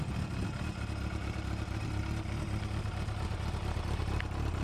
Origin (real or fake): real